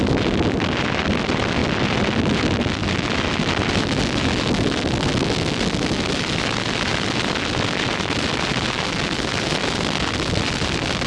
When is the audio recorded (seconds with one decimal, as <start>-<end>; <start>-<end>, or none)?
0.0-11.1